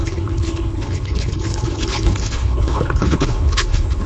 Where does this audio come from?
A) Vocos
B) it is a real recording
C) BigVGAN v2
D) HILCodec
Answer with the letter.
D